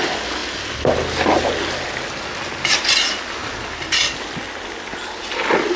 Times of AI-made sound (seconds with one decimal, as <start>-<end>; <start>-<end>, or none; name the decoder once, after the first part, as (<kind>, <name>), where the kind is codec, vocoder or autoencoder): none